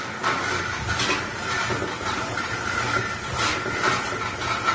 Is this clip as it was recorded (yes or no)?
yes